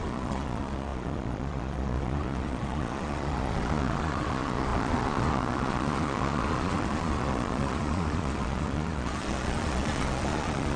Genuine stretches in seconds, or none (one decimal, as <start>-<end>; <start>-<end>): none